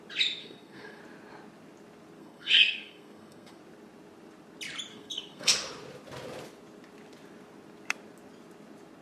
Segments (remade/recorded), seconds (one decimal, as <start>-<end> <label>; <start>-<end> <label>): 0.0-0.4 recorded; 0.4-1.0 remade; 1.0-2.2 recorded; 2.2-3.6 remade; 3.6-4.9 recorded; 4.9-5.5 remade; 5.5-9.0 recorded